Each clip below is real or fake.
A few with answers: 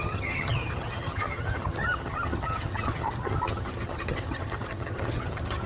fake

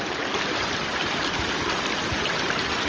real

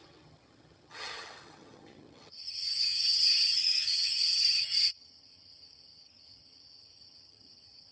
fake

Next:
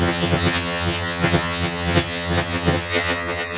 fake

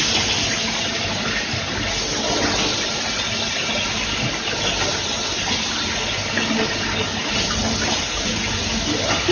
real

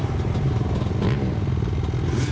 real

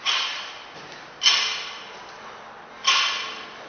real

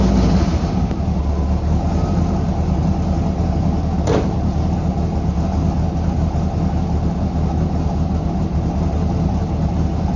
real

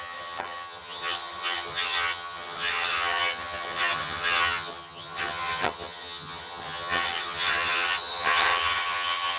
fake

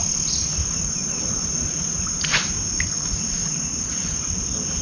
real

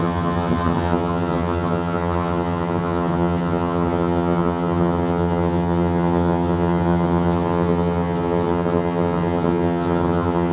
fake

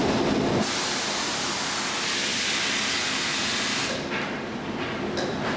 real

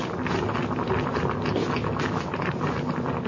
real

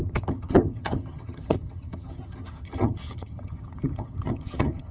fake